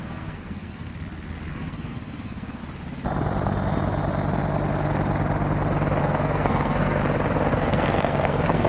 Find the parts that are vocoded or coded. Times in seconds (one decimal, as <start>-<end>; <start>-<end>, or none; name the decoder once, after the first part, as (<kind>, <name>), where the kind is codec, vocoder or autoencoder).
0.0-0.9 (codec, SNAC); 1.5-2.6; 6.0-7.0; 7.5-8.7